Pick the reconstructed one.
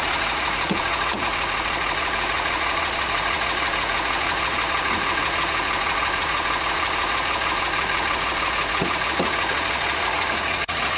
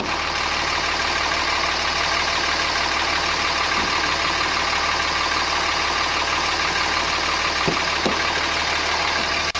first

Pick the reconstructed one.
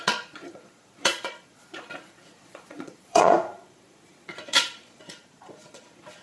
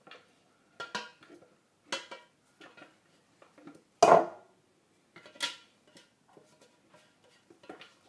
first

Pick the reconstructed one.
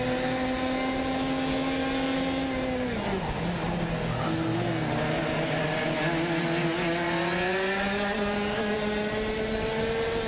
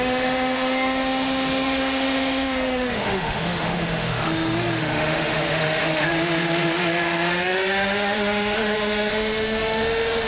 second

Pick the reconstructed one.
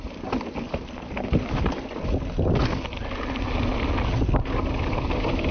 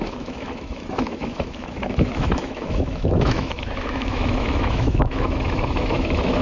second